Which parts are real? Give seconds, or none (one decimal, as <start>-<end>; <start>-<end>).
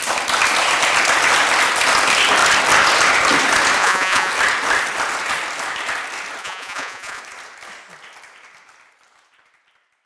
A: 0.0-3.8; 4.3-6.4; 7.2-10.1